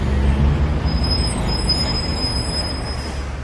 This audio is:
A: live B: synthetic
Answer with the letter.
A